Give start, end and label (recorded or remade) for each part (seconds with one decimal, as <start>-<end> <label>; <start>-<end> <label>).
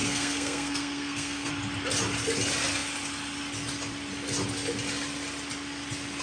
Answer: 0.0-1.5 remade; 1.5-6.2 recorded